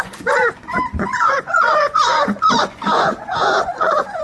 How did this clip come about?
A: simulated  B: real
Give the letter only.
A